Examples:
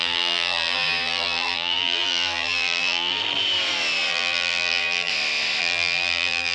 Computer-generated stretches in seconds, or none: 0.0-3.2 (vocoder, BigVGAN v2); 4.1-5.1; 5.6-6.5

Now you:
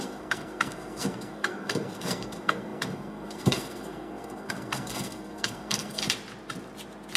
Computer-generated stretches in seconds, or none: 0.0-6.0 (codec, SNAC)

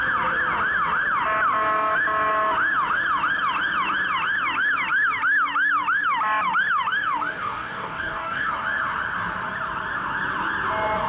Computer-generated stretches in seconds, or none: 7.4-8.5 (codec, DAC)

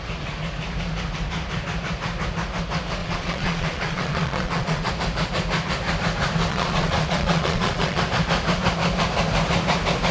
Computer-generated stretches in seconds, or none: 3.0-4.9 (vocoder, Vocos); 6.5-8.0

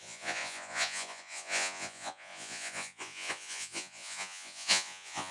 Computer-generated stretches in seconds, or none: 0.0-5.3 (vocoder, Vocos)

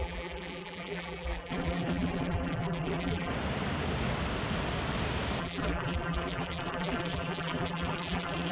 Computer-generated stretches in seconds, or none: 0.0-3.3 (vocoder, BigVGAN v2); 5.4-8.5

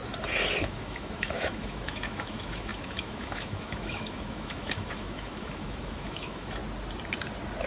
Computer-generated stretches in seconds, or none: 0.6-6.6 (autoencoder, DAC-VAE)